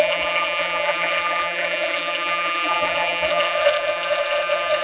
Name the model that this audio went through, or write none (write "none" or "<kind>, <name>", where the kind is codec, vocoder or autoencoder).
vocoder, BigVGAN v2